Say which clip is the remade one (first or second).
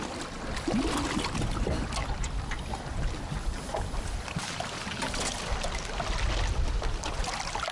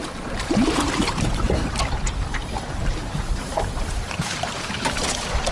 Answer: second